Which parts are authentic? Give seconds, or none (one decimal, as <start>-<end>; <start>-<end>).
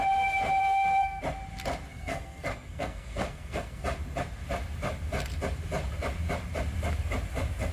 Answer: 0.0-0.6; 1.2-1.9; 3.8-7.7